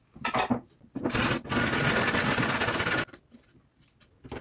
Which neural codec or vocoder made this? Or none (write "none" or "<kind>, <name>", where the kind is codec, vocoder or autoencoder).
none